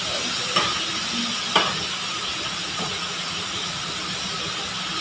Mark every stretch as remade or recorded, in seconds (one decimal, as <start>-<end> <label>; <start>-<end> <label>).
0.0-2.6 recorded; 2.6-3.9 remade; 3.9-5.0 recorded